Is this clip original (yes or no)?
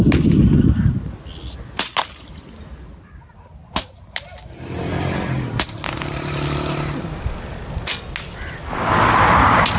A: yes